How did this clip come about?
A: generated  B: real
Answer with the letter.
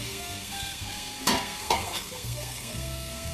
A